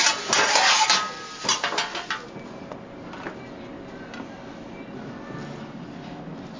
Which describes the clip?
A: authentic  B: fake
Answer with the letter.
A